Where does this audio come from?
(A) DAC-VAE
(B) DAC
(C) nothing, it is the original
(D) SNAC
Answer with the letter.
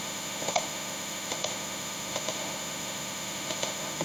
A